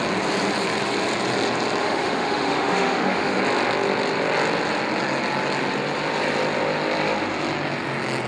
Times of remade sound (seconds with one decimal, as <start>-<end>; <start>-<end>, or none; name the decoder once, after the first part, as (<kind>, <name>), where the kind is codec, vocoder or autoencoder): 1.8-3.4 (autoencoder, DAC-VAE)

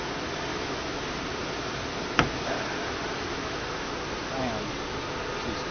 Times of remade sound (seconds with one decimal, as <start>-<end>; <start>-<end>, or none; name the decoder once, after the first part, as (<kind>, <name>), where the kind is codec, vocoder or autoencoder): 0.5-1.0 (autoencoder, DAC-VAE); 3.3-3.9

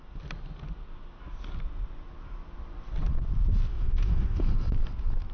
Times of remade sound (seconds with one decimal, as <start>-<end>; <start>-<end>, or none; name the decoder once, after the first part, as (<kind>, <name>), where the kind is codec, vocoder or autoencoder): 3.7-4.4 (autoencoder, DAC-VAE)